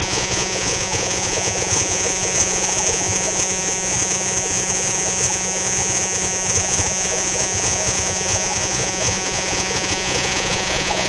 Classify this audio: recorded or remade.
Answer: remade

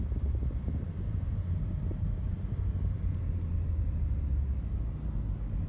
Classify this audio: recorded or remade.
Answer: recorded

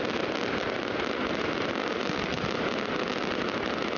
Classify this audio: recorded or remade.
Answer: recorded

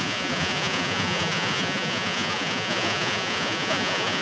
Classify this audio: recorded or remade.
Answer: remade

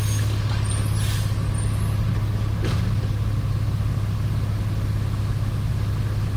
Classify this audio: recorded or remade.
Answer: recorded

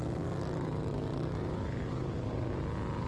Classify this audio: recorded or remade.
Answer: recorded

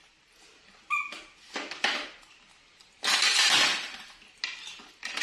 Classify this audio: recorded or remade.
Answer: recorded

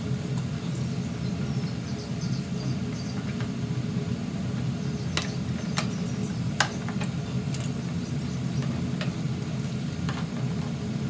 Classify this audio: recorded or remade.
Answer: recorded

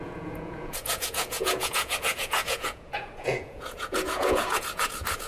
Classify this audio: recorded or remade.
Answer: remade